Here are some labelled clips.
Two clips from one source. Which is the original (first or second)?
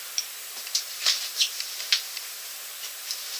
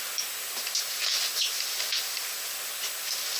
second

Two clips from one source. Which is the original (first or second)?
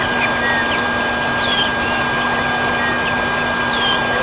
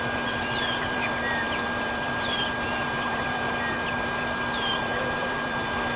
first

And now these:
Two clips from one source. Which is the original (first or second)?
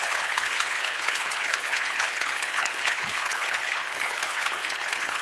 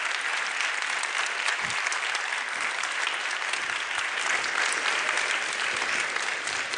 second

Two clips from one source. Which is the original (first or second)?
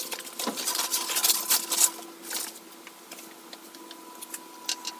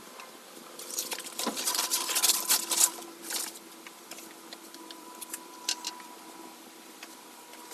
first